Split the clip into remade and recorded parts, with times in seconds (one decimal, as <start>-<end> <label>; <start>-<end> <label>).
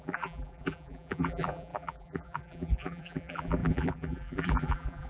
0.0-5.1 remade